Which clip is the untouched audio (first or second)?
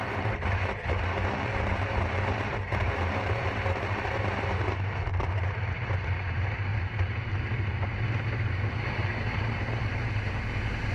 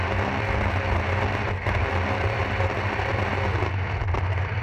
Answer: second